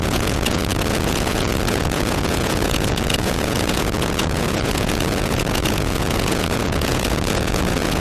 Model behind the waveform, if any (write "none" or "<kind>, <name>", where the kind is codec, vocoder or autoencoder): vocoder, Vocos